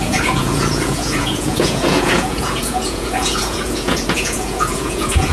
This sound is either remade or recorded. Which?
remade